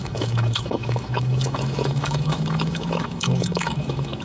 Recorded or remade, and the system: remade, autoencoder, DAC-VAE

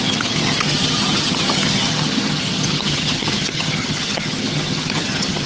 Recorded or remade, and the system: remade, vocoder, HiFi-GAN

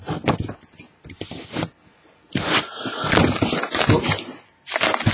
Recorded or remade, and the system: recorded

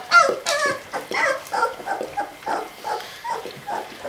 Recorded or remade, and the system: remade, vocoder, BigVGAN v2